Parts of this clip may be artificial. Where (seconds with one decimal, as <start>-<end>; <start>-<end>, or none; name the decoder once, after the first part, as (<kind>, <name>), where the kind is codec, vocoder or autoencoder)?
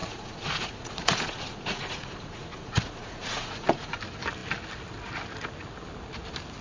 0.0-4.0 (vocoder, Vocos)